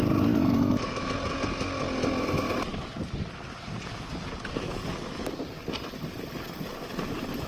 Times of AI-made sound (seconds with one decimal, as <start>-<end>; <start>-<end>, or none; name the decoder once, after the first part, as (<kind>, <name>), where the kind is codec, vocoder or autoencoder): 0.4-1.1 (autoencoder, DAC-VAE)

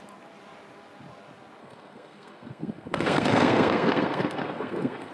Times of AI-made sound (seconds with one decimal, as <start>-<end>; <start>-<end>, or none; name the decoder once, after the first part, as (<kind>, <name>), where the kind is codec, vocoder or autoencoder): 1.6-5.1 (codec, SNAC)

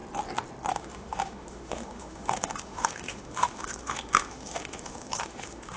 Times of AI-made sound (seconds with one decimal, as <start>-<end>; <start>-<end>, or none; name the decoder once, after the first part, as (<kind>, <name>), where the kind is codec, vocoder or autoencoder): 0.7-5.8 (autoencoder, DAC-VAE)

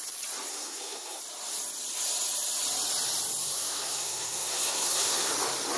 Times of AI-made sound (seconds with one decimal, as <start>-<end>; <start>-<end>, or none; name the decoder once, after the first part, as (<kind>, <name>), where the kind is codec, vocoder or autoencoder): 0.5-1.2 (codec, SNAC); 3.4-5.3

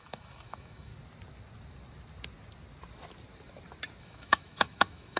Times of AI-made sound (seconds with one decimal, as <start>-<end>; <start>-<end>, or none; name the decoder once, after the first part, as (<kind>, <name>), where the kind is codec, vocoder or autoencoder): 0.0-0.9 (autoencoder, DAC-VAE); 4.0-5.2

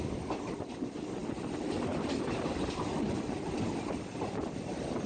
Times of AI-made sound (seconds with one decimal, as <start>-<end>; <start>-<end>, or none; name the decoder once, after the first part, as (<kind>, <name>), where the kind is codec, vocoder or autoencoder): none